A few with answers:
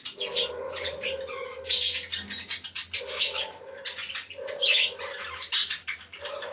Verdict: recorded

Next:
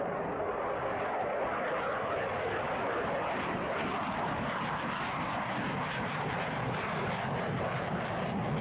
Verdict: recorded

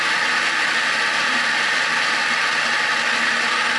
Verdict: recorded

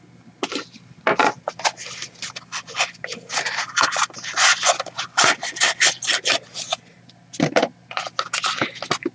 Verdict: recorded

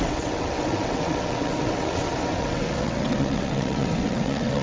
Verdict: remade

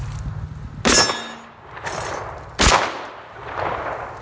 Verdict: recorded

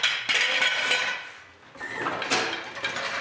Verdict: recorded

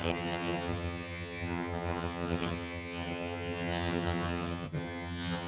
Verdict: remade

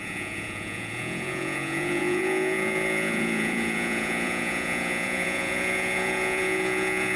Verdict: remade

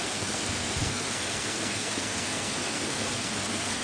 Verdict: remade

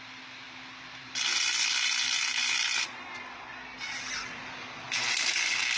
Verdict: recorded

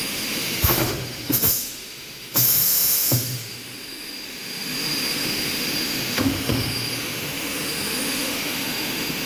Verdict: remade